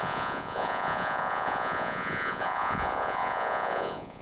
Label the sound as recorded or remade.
remade